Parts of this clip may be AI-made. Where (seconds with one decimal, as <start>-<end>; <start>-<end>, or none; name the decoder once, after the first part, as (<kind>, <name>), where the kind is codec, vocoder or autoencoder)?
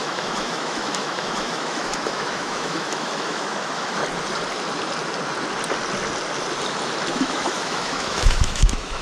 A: 0.0-4.0 (autoencoder, DAC-VAE); 7.1-9.0